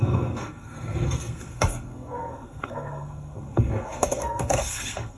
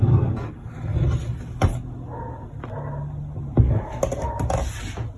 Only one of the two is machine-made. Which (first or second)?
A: first